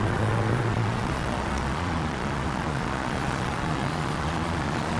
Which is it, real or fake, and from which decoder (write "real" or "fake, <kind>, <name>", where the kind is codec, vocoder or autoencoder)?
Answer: fake, vocoder, Vocos